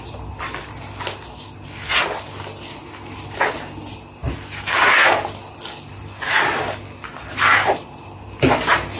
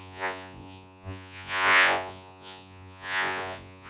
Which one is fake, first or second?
second